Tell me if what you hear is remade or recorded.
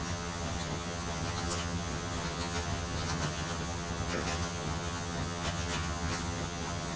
remade